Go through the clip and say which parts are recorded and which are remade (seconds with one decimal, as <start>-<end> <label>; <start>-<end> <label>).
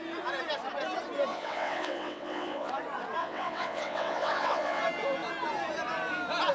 0.0-1.3 recorded; 1.3-2.7 remade; 2.7-3.2 recorded; 3.2-4.8 remade; 4.8-6.5 recorded